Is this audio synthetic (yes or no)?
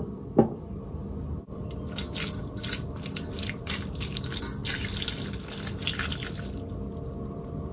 no